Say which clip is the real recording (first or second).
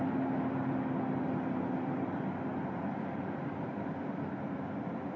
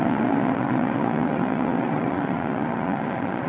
first